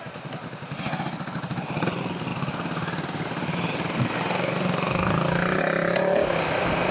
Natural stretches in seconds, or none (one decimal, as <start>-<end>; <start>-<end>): 0.0-6.9